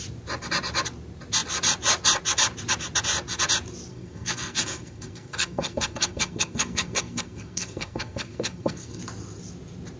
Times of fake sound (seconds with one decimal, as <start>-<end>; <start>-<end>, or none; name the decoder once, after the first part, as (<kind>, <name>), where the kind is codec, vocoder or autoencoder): 3.9-9.0 (codec, SNAC)